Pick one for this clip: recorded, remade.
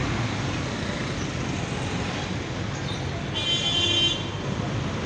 recorded